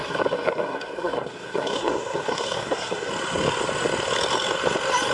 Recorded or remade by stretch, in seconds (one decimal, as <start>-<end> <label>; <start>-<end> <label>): 0.0-3.1 remade; 3.1-5.1 recorded